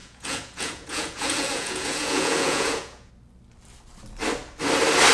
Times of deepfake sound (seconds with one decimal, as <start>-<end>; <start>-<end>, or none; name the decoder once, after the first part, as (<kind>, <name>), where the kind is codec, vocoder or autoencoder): 0.0-3.1 (vocoder, Vocos)